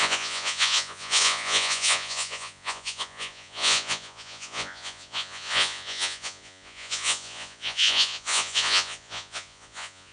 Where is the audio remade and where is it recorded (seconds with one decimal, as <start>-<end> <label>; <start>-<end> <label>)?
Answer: 0.0-10.1 remade